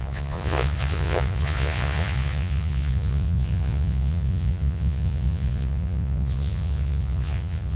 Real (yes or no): no